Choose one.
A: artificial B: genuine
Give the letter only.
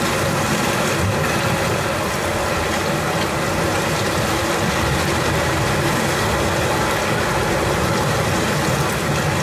B